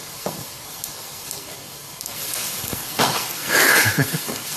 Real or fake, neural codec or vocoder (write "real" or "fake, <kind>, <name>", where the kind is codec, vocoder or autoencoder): fake, codec, SNAC